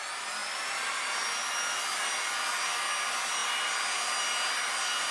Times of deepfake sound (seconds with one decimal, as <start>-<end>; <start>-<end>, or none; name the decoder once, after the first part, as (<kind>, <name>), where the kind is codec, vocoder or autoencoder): none